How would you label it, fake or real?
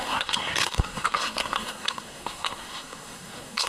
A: fake